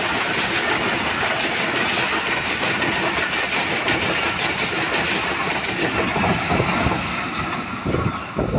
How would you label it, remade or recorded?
recorded